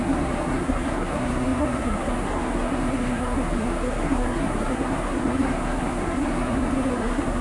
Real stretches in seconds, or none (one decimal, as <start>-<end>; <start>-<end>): none